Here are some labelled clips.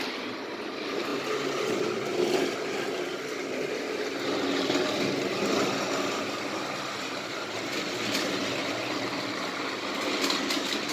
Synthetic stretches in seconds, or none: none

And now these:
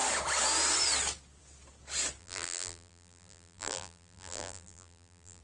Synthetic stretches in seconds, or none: 2.2-5.4

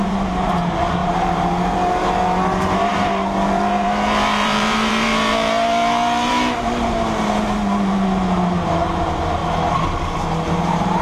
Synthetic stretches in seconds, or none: 0.0-9.4; 10.0-11.0

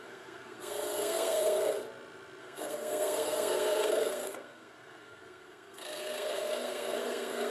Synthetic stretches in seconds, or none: 0.0-1.8; 2.4-7.5

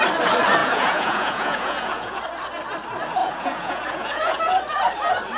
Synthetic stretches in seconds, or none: 0.6-2.2; 3.2-4.4

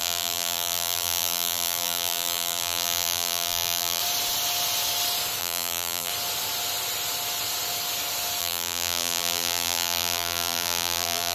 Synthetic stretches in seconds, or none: 0.0-4.0; 5.4-6.1; 8.4-11.3

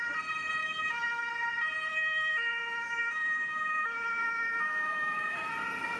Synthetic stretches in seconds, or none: 0.6-1.3; 1.9-5.5